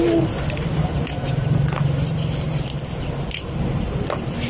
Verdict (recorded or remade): recorded